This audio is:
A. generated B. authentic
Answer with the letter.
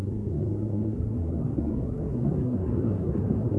A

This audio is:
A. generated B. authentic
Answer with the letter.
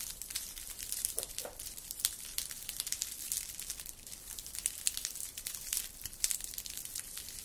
A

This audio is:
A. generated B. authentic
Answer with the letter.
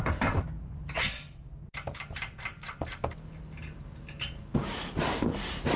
B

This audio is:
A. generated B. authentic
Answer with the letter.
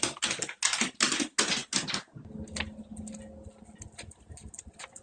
B